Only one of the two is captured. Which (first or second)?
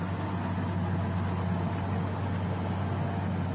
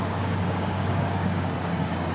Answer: first